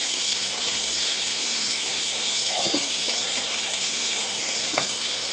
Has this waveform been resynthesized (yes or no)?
yes